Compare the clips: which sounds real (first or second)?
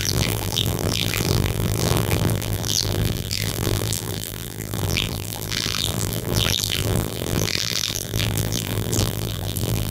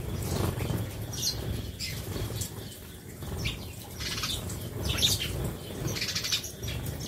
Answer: second